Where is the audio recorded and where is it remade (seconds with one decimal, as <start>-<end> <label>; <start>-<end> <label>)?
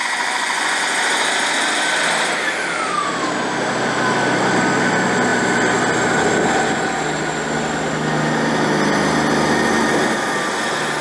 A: 0.0-0.8 remade; 0.8-11.0 recorded